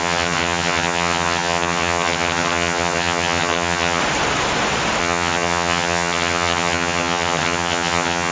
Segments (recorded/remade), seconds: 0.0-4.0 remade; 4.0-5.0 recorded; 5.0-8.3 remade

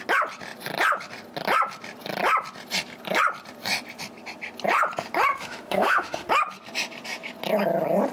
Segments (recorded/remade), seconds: 0.0-5.3 recorded; 5.3-6.3 remade; 6.3-8.1 recorded